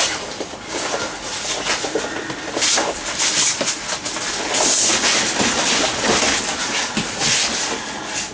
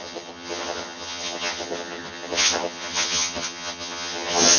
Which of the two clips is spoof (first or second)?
second